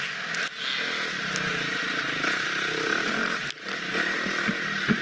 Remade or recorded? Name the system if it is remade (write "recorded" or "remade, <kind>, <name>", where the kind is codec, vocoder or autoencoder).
recorded